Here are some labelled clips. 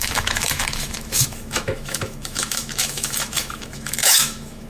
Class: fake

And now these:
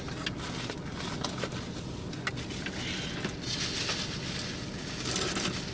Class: real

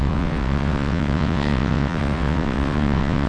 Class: fake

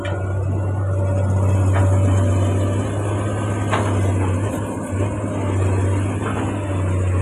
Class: real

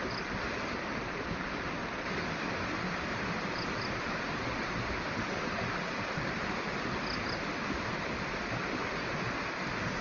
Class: real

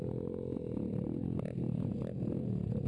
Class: real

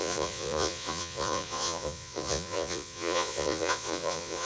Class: fake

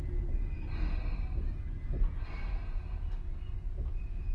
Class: real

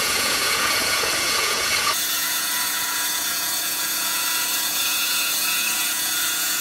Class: fake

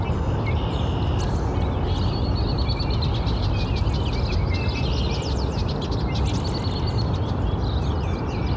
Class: real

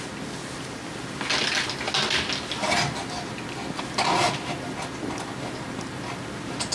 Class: real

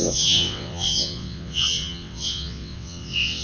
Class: fake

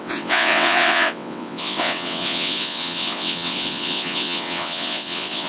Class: fake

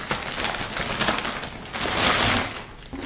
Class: real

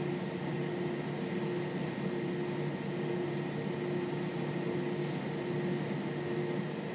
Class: real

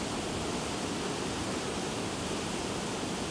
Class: real